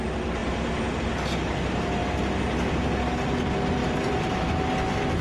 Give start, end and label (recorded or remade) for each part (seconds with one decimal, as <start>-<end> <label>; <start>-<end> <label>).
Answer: 0.0-3.8 recorded; 3.8-4.5 remade; 4.5-5.2 recorded